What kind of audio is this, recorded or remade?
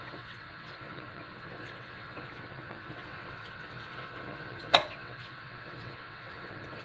remade